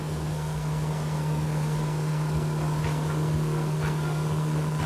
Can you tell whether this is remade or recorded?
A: remade